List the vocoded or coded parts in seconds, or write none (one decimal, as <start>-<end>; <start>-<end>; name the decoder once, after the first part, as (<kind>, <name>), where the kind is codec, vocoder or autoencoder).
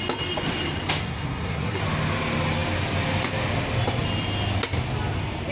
1.0-1.8 (codec, SNAC)